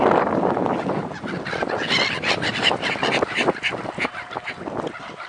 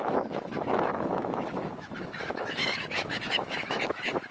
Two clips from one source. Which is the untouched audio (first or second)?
first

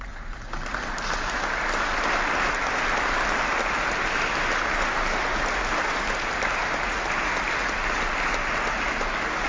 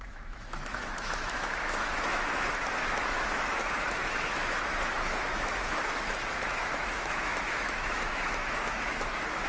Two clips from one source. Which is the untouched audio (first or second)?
first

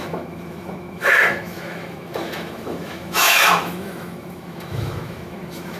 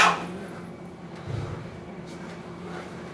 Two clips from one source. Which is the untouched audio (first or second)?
second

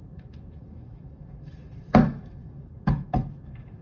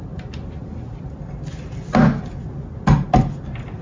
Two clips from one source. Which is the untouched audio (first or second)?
second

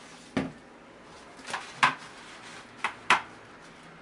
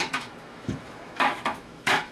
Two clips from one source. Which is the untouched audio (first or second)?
first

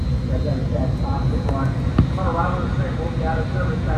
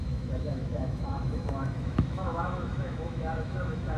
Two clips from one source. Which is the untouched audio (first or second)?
first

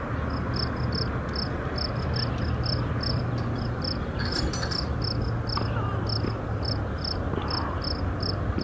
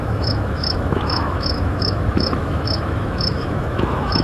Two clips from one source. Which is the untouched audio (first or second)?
first